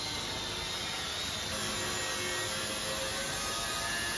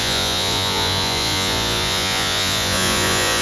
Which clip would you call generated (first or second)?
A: second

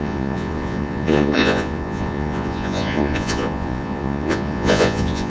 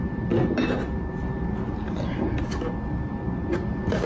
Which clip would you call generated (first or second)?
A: first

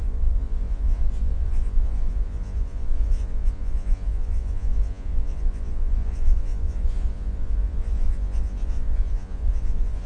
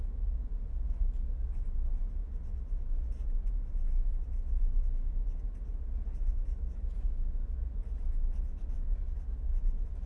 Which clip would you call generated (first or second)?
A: first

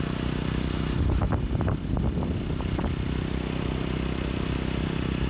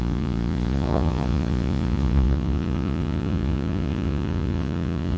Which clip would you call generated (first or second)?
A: second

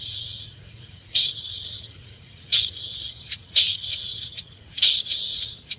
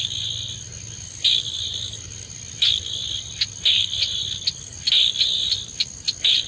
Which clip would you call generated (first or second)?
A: first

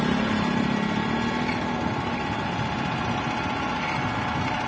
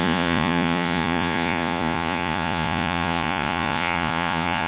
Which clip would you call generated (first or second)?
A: second